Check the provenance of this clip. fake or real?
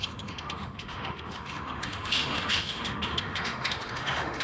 fake